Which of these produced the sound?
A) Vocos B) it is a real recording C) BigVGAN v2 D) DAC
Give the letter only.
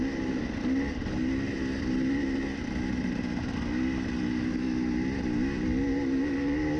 B